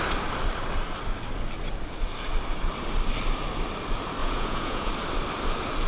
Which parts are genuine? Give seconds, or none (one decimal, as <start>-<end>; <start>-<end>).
0.0-4.2; 4.9-5.9